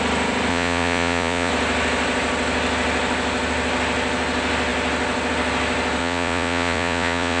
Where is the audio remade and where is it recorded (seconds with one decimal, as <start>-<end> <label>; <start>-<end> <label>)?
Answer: 0.0-0.5 recorded; 0.5-1.5 remade; 1.5-6.0 recorded; 6.0-7.4 remade